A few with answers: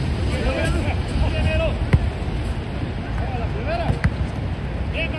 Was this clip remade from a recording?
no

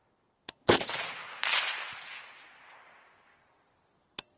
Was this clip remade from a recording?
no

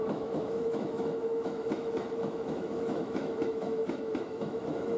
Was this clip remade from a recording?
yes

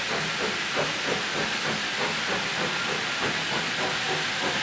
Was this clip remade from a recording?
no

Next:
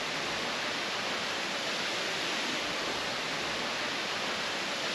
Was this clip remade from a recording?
no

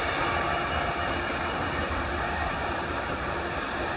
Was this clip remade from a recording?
no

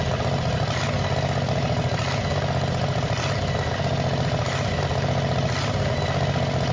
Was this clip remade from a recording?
no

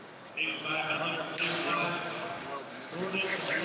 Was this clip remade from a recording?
yes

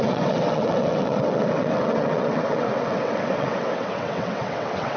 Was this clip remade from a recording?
yes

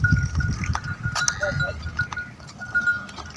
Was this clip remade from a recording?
no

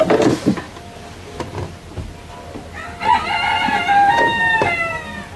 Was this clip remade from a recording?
no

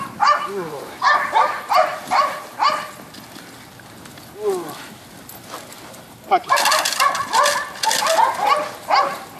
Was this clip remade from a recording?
no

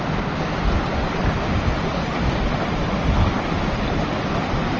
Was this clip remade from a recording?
no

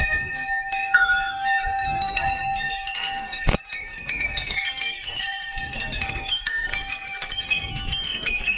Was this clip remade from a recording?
yes